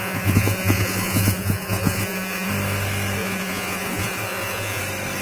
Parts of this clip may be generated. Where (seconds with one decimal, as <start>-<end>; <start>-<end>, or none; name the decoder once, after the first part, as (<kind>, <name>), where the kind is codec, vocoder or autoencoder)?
0.0-2.5 (vocoder, Vocos); 3.2-4.8